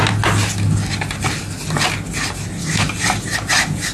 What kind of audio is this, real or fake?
real